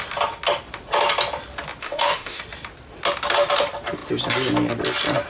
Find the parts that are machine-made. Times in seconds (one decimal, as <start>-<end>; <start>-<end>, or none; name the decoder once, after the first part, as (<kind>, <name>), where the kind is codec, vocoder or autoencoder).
1.8-2.4 (autoencoder, DAC-VAE)